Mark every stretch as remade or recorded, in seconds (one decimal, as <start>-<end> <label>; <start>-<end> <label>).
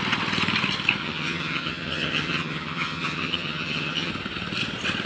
0.0-1.0 recorded; 1.0-4.1 remade; 4.1-5.1 recorded